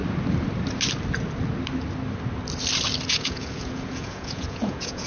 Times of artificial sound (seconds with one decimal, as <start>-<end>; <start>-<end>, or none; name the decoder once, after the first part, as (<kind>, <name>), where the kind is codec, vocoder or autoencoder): 3.1-5.1 (vocoder, Vocos)